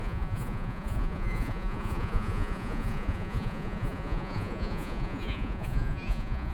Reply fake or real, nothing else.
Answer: fake